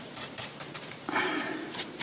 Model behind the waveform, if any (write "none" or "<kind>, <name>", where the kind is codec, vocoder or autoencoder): vocoder, BigVGAN v2